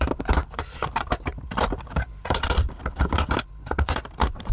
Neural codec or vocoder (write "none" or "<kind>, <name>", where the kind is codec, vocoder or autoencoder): vocoder, BigVGAN v2